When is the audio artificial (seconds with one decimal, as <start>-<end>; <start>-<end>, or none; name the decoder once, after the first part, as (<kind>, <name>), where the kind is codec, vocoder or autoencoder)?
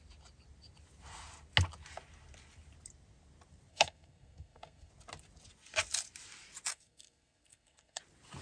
3.7-4.9 (codec, SNAC); 6.7-8.0